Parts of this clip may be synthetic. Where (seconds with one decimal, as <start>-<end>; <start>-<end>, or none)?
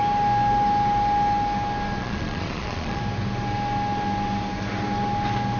2.0-3.0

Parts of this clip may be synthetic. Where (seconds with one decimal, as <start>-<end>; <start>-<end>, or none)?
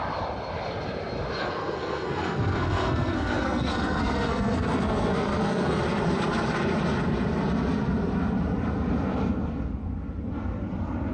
1.4-5.8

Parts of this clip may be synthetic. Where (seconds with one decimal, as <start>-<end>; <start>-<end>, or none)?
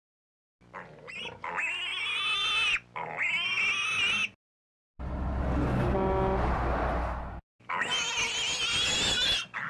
none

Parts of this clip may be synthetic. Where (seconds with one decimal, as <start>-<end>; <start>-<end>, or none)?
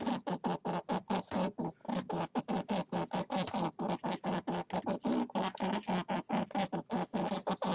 1.8-2.4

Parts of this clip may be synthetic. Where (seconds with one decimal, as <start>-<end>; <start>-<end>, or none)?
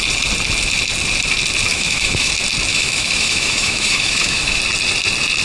1.7-2.3; 2.7-4.6